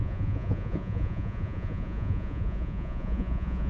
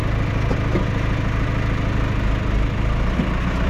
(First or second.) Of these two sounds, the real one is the second